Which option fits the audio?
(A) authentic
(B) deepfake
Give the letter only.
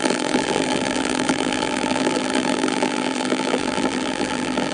B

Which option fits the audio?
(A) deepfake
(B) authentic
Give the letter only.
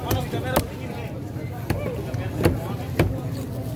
B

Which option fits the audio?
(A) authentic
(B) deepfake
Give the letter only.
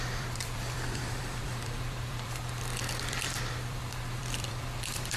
B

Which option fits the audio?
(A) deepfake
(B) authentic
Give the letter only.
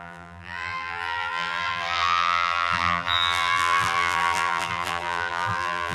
A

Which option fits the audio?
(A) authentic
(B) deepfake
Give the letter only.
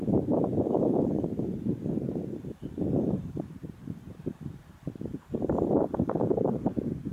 B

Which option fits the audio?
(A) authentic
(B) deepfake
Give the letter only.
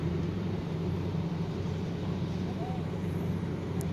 B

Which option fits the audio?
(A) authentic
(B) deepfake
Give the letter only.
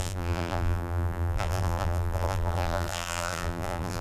B